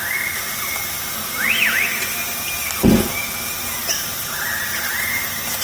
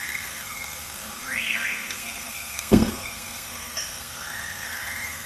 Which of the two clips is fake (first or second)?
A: second